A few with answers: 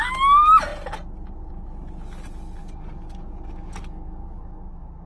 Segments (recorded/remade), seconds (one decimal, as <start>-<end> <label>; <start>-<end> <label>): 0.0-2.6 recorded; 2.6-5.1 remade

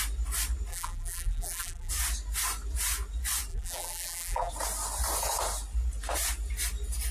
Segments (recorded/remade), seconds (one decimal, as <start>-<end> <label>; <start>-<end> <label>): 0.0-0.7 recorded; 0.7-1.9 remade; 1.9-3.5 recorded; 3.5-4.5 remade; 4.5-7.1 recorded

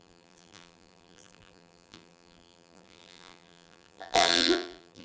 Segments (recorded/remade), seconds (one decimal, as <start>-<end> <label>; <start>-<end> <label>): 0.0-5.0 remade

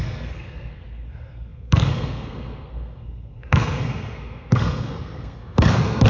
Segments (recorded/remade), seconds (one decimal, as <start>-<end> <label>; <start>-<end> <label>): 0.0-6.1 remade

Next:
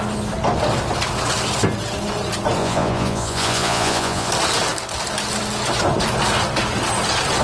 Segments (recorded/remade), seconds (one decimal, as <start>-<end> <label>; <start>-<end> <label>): 0.0-2.6 recorded; 2.6-4.3 remade; 4.3-7.4 recorded

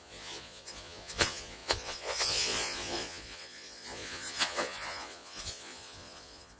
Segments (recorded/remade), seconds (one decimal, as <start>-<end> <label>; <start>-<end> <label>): 0.0-6.6 remade